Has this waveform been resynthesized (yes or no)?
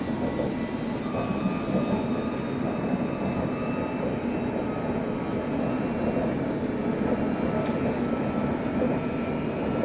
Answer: no